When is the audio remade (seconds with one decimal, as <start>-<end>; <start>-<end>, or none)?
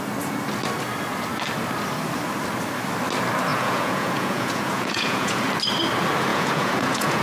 3.5-5.4; 6.3-7.2